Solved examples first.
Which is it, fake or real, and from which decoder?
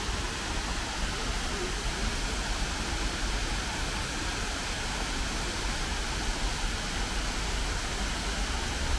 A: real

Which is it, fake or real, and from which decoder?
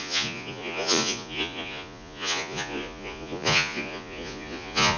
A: fake, vocoder, Vocos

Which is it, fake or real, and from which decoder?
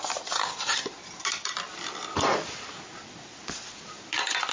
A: real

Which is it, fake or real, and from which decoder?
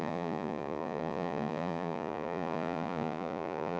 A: fake, vocoder, Vocos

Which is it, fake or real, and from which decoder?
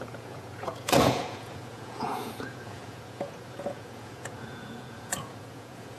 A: fake, vocoder, Vocos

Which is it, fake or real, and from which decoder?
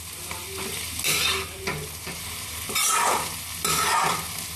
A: real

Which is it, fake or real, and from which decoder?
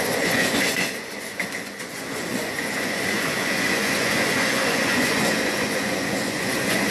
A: fake, vocoder, Vocos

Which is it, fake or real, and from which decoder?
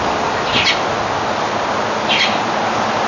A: real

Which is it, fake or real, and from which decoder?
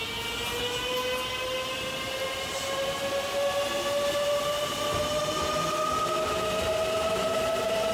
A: real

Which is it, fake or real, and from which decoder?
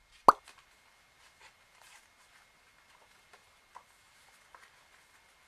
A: real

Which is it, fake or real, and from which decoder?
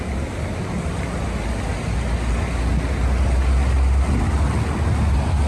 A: real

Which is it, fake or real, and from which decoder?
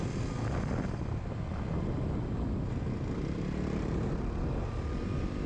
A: real